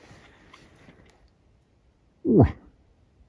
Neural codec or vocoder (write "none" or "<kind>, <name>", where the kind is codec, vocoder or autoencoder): none